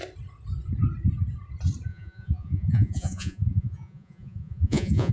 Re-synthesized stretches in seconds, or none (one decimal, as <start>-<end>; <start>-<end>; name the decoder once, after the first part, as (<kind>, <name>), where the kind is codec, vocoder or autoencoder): 1.9-5.1 (vocoder, Vocos)